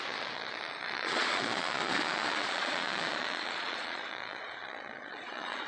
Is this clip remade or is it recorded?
remade